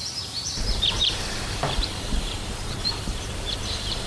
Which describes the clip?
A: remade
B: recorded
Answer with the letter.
A